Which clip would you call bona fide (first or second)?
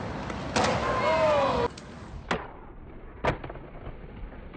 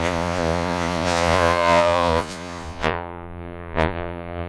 first